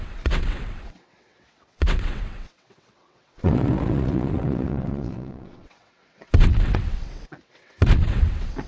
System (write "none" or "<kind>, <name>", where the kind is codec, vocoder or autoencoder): vocoder, WaveNeXt